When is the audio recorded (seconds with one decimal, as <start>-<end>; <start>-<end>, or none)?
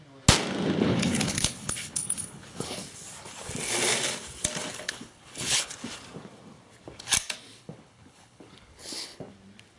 0.0-0.9; 2.8-4.7; 5.7-7.6; 9.3-9.8